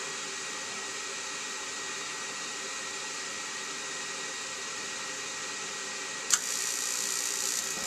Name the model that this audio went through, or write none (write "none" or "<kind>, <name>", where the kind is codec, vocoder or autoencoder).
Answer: none